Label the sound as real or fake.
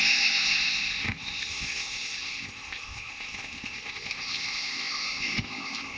fake